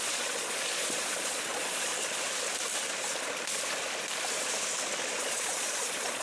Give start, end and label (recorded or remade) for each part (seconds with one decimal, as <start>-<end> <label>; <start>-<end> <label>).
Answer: 0.0-1.9 remade; 1.9-5.2 recorded; 5.2-6.2 remade